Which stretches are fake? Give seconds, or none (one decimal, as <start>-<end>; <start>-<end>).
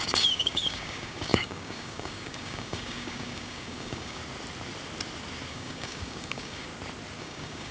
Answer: 0.0-4.2; 5.5-6.7; 7.2-7.7